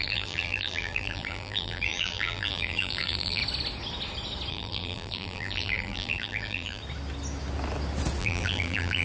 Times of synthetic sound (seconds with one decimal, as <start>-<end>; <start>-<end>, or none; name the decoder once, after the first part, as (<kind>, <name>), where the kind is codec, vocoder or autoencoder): 0.0-3.4 (vocoder, BigVGAN v2); 4.5-6.8; 8.2-9.0